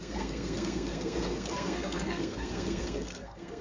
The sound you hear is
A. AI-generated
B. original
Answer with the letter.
A